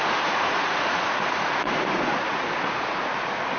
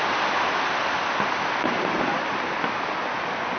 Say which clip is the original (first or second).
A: second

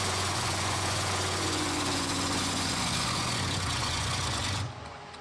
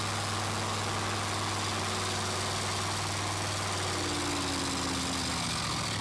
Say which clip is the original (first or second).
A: second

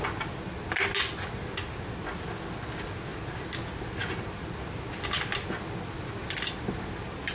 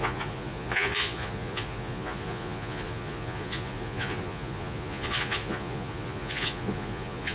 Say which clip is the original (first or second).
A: first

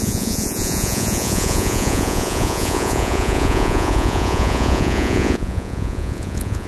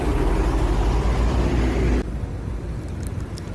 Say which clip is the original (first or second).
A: second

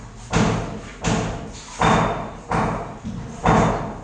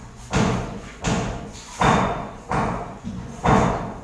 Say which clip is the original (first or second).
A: first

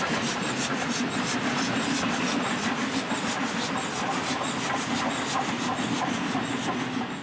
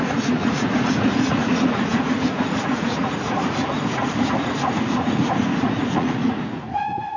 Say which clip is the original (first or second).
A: first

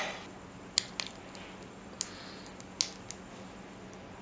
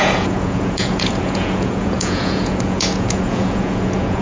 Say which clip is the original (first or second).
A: first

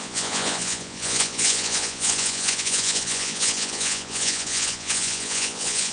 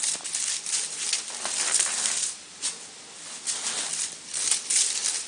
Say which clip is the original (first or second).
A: second